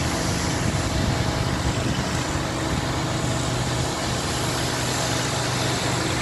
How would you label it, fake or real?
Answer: real